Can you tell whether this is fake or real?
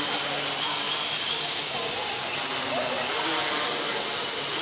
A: real